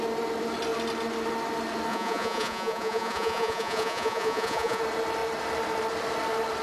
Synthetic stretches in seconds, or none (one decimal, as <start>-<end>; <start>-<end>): 1.9-4.8